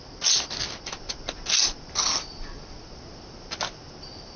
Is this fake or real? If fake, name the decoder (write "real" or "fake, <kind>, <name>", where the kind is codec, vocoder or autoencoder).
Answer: real